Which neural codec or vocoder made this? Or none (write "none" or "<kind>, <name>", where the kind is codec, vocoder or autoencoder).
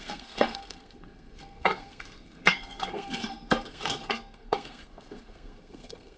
codec, SNAC